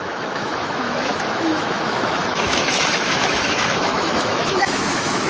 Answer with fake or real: fake